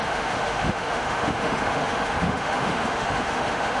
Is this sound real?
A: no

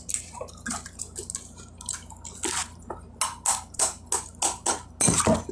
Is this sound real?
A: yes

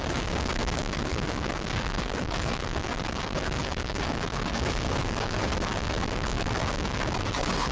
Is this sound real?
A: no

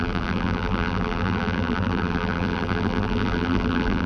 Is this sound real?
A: no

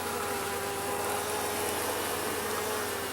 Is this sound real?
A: yes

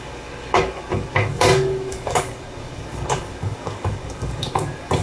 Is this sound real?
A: no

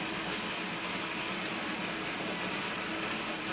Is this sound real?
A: yes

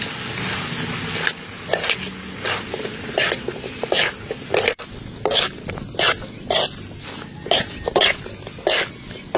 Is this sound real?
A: yes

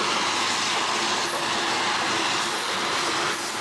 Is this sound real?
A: yes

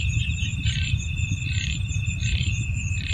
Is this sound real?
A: no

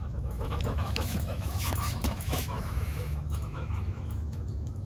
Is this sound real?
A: no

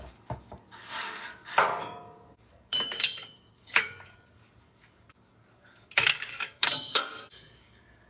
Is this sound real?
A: no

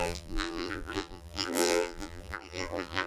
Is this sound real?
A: no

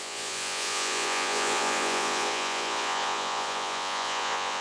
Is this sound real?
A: no